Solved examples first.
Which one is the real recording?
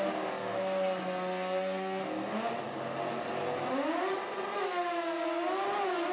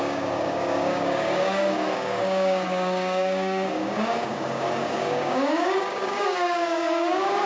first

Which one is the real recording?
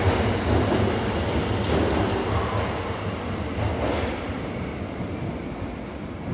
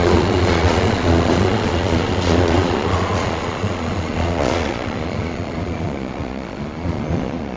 first